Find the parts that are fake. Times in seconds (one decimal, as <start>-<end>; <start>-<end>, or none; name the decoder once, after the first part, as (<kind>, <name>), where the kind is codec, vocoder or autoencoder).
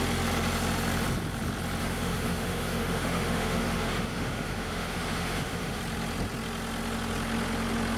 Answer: 1.8-5.8 (autoencoder, DAC-VAE)